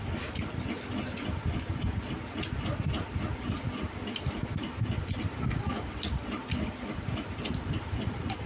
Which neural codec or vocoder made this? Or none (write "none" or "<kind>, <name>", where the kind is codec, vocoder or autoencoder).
none